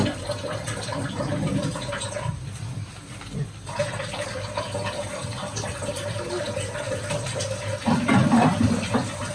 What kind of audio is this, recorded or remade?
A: remade